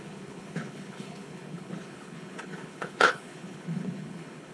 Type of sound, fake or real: fake